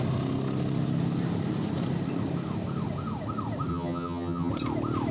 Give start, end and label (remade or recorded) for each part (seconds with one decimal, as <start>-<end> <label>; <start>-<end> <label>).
0.0-3.7 recorded; 3.7-4.5 remade; 4.5-5.1 recorded